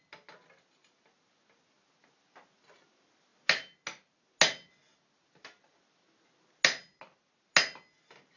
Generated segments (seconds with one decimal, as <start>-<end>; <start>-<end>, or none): none